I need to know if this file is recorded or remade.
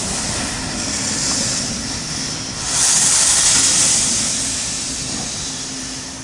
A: recorded